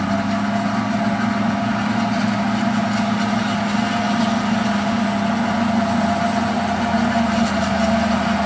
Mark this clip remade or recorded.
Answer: recorded